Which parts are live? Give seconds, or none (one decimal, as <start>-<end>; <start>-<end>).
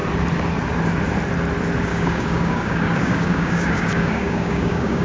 0.0-1.9